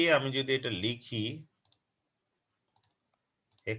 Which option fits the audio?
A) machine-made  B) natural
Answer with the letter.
B